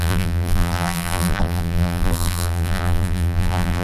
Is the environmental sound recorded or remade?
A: remade